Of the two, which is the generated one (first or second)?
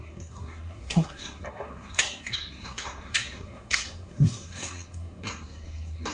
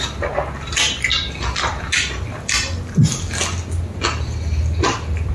first